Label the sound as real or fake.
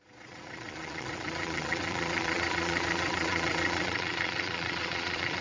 fake